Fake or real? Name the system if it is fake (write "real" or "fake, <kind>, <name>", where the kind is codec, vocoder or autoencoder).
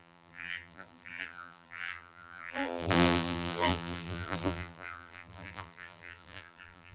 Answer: fake, vocoder, BigVGAN v2